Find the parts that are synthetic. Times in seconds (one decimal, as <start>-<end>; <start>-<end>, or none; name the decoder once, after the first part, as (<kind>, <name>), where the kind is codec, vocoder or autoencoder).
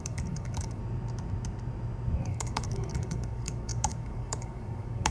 0.0-0.8 (codec, DAC); 2.2-5.1